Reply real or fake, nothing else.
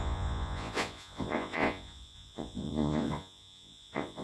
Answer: fake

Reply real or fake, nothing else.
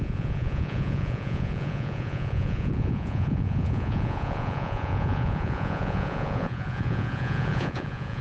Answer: fake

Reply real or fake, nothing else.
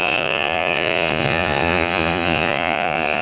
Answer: fake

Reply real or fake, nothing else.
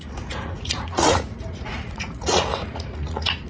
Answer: fake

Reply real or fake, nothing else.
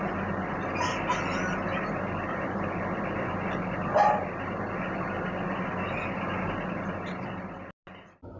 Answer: real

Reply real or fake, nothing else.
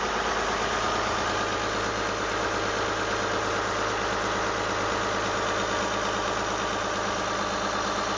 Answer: real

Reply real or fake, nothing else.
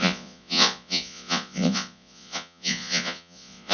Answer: fake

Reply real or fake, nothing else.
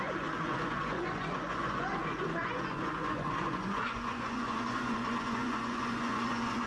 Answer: fake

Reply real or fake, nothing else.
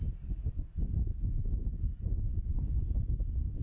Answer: real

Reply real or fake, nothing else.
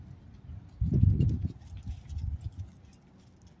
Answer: real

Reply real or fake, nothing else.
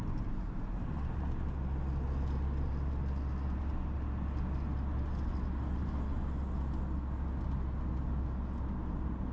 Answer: real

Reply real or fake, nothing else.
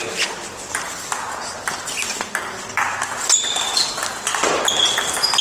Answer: real